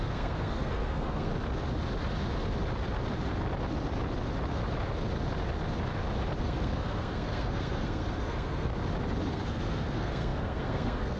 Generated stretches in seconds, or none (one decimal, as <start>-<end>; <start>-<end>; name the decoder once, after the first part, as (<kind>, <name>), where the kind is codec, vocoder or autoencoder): 0.0-1.3 (codec, SNAC); 6.4-8.7; 9.3-11.2